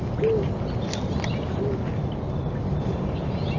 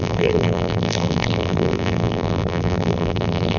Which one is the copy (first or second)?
second